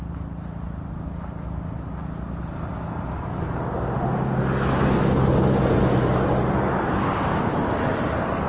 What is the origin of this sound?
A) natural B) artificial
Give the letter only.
A